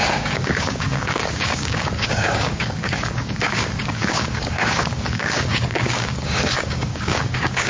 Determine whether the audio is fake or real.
fake